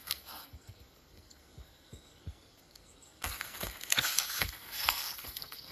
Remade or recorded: remade